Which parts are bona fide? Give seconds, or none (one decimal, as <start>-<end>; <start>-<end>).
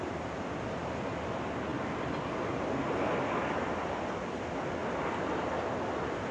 0.0-6.3